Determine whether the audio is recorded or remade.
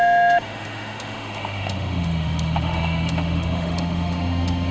remade